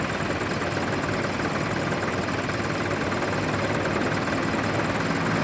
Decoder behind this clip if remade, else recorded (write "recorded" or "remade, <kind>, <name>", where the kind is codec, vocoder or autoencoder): recorded